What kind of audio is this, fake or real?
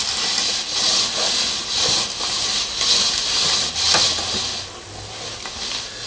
real